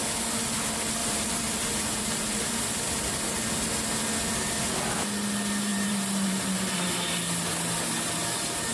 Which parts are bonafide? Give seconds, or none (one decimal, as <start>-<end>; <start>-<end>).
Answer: 0.0-1.0; 1.7-5.7; 6.6-8.7